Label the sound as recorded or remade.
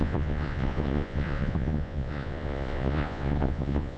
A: remade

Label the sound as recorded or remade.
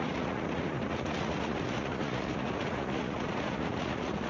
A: remade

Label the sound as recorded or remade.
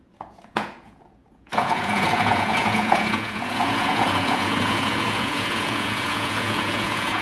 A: remade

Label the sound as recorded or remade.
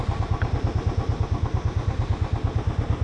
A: recorded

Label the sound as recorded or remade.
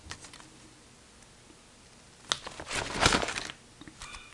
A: recorded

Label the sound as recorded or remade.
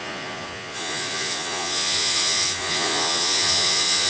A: remade